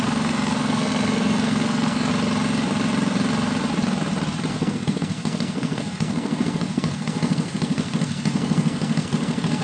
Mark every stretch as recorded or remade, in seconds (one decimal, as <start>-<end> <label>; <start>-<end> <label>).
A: 0.0-2.1 remade; 2.1-4.5 recorded; 4.5-9.6 remade

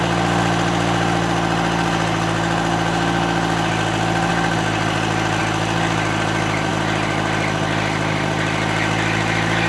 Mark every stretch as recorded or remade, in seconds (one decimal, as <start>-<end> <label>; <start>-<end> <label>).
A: 0.0-9.7 recorded

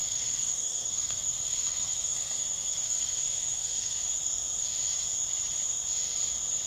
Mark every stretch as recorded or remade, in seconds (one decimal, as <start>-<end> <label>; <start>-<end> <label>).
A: 0.0-4.0 remade; 4.0-6.7 recorded

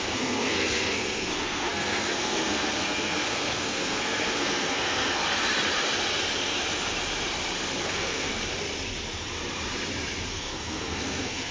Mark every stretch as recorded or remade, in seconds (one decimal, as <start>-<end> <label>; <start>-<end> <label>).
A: 0.0-5.2 remade; 5.2-7.8 recorded; 7.8-8.3 remade; 8.3-10.3 recorded; 10.3-11.5 remade

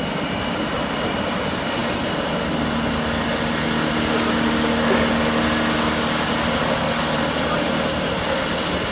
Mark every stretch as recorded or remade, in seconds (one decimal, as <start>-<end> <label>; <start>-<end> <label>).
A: 0.0-8.9 recorded